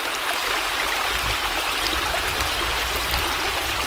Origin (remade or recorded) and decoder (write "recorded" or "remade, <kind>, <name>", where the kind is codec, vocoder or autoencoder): recorded